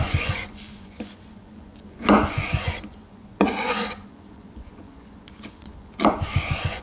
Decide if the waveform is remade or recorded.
remade